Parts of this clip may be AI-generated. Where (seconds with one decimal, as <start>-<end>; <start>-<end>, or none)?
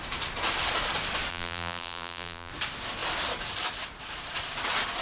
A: 1.3-2.5